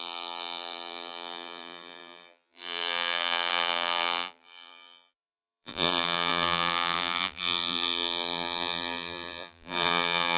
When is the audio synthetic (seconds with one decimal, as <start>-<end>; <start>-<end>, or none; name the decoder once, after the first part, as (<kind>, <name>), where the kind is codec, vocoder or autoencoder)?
0.0-10.4 (vocoder, BigVGAN v2)